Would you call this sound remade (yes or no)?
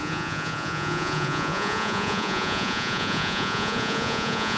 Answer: yes